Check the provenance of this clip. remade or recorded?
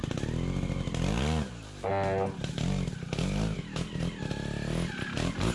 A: recorded